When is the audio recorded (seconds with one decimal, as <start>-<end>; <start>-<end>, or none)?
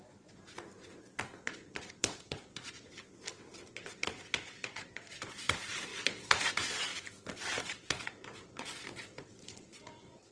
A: 0.4-1.4; 2.9-3.7; 6.9-7.6